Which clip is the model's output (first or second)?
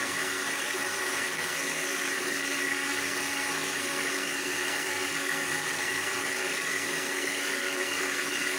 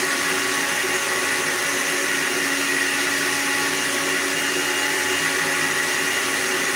first